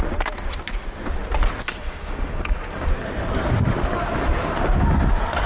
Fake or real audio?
real